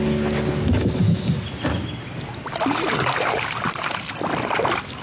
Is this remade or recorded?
recorded